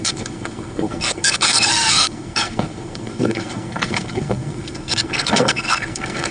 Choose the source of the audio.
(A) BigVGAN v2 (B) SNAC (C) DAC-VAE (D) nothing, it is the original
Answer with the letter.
B